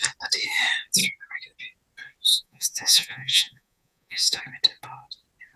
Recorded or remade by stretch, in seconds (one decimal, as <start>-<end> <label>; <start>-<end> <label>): 0.0-2.3 recorded; 2.3-4.4 remade; 4.4-5.6 recorded